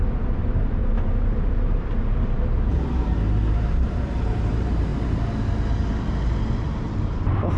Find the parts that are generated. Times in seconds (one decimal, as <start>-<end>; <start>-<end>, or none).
0.0-2.7; 3.7-4.9; 6.7-7.6